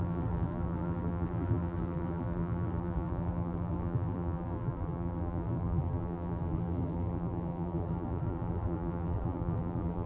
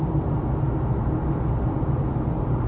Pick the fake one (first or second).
first